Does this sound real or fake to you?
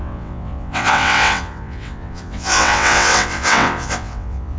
fake